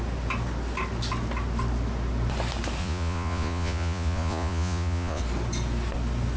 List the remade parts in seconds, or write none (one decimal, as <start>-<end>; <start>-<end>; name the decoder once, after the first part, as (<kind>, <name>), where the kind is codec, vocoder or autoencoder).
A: 2.8-5.2 (vocoder, Vocos)